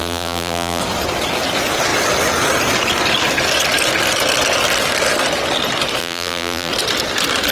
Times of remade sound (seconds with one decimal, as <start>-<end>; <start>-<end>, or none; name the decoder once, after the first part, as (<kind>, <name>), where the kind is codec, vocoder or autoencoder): 0.0-0.8 (vocoder, BigVGAN v2); 6.0-6.7